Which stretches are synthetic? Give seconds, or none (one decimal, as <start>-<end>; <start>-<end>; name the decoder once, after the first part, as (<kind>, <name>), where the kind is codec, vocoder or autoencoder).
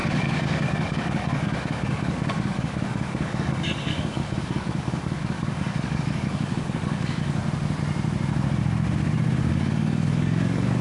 0.0-7.4 (codec, DAC); 9.5-10.8